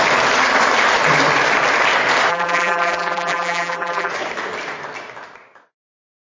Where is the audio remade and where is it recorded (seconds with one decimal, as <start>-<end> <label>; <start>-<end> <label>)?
0.0-2.3 recorded; 2.3-4.1 remade; 4.1-6.3 recorded